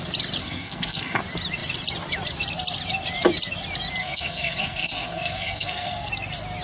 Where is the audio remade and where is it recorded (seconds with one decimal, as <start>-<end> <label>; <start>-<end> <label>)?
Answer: 0.0-0.4 recorded; 0.4-1.2 remade; 1.2-4.0 recorded; 4.0-6.1 remade; 6.1-6.6 recorded